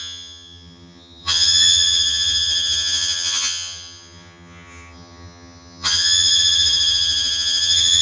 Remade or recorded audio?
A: remade